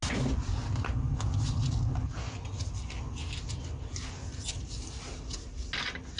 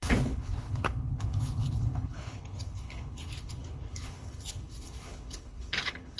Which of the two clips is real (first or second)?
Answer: first